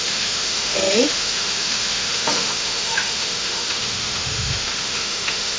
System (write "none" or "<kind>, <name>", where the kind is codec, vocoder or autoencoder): autoencoder, DAC-VAE